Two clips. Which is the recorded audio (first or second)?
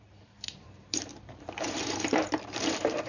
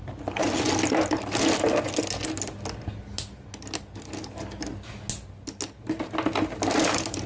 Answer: second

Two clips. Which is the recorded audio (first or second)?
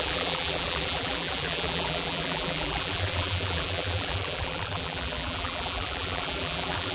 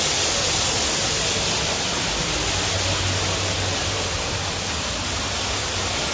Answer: second